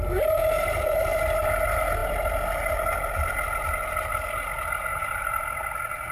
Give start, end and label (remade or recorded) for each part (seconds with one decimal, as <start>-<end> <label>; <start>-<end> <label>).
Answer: 0.0-0.4 recorded; 0.4-1.5 remade; 1.5-4.9 recorded; 4.9-5.4 remade; 5.4-6.1 recorded